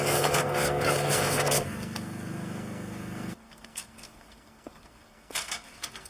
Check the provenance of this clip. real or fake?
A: fake